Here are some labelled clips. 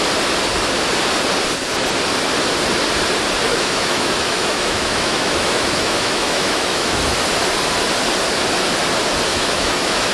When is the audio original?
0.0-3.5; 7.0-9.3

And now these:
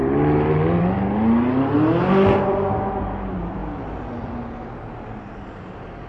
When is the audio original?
0.0-6.1

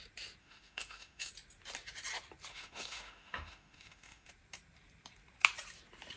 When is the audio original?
0.0-0.4; 1.3-2.5; 4.3-6.2

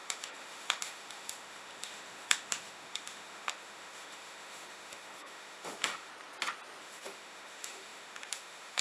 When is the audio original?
6.1-6.8

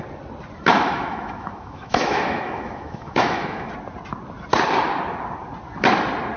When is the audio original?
0.0-0.7; 3.7-6.4

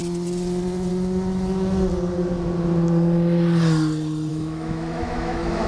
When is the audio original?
0.0-4.3

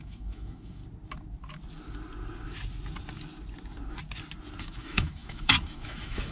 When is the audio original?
0.8-4.6